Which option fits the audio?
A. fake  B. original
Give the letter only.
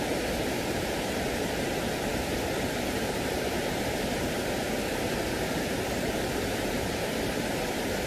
A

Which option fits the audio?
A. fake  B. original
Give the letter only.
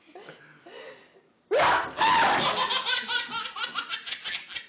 B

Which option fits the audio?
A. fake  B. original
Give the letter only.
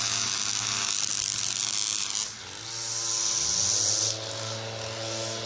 B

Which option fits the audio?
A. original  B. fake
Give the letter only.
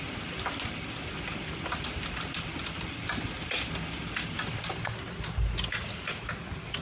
A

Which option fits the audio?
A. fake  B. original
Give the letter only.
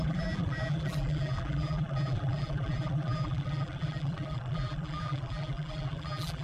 A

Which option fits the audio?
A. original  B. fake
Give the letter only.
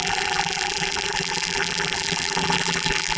B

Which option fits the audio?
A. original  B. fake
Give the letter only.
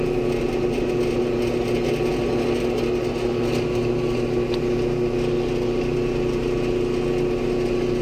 A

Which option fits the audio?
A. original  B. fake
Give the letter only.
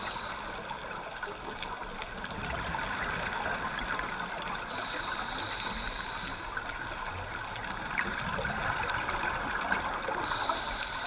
A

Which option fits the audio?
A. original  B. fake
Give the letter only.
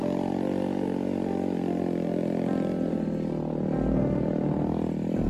A